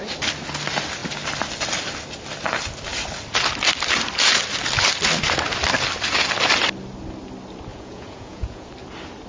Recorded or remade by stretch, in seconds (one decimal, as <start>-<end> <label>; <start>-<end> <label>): 0.0-7.7 recorded; 7.7-8.7 remade; 8.7-9.3 recorded